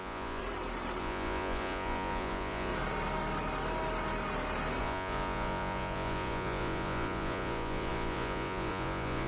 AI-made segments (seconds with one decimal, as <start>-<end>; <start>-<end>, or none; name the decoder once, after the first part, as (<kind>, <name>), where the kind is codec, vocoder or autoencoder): 0.0-0.4 (vocoder, Vocos); 1.0-2.7; 4.8-9.3